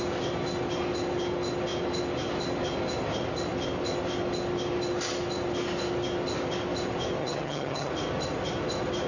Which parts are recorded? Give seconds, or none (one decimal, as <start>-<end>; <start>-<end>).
0.0-7.2; 7.9-9.1